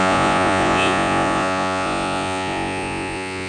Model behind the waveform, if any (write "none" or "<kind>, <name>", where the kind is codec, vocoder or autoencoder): vocoder, Vocos